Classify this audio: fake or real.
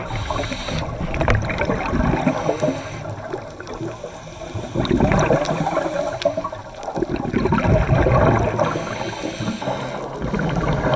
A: real